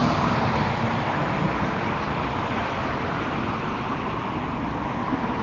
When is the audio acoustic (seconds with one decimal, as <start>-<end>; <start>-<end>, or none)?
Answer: 0.0-5.4